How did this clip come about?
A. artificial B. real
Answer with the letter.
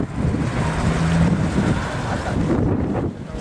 B